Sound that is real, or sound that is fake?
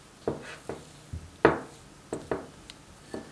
real